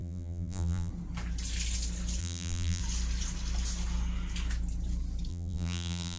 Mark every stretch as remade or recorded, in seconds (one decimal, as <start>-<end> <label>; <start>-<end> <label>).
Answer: 0.0-0.9 remade; 0.9-2.2 recorded; 2.2-2.8 remade; 2.8-5.3 recorded; 5.3-6.2 remade